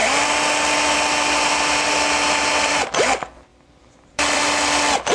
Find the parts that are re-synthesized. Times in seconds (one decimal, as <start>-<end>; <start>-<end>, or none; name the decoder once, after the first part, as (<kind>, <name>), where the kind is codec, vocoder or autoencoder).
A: 3.5-4.4 (vocoder, BigVGAN v2)